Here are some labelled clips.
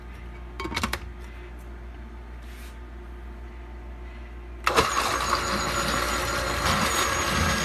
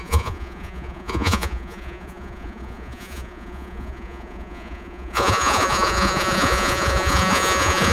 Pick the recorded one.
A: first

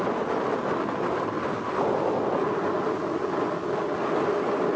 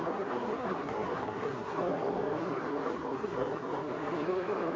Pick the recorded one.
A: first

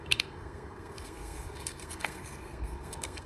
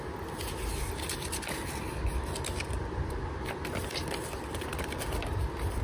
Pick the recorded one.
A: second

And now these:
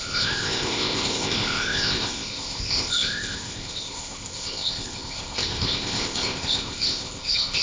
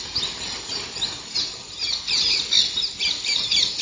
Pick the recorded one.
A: second